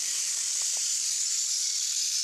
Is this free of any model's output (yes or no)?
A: no